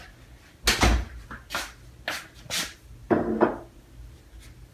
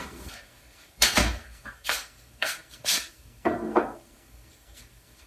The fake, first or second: second